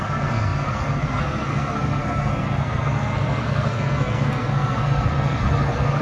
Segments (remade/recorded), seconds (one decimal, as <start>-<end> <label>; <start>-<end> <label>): 0.0-6.0 remade